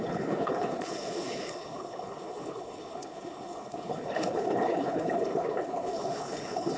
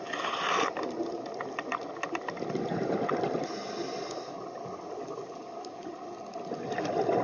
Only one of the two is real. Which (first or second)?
second